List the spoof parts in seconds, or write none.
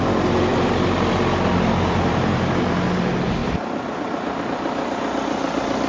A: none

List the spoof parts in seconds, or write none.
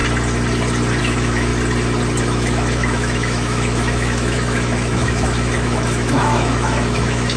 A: 1.0-1.5; 2.2-7.4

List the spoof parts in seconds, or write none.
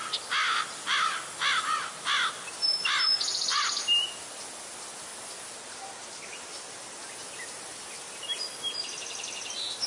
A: none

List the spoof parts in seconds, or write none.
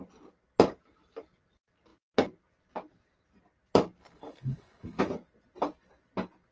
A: 4.0-5.0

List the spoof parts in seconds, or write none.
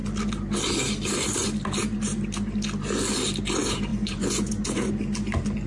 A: 3.9-4.9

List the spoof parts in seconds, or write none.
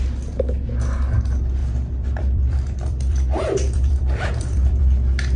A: 1.6-4.8